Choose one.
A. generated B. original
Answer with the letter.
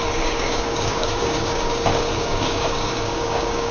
A